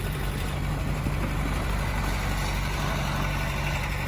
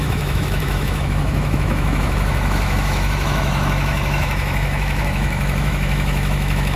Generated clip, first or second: second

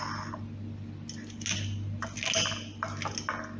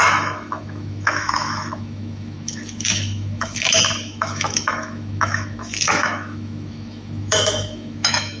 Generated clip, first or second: second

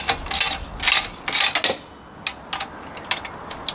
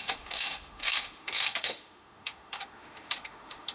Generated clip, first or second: second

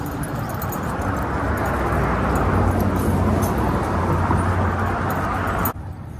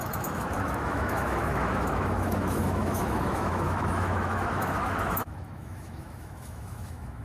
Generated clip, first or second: second